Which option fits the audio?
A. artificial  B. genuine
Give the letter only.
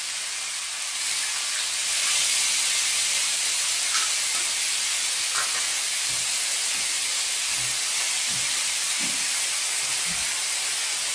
B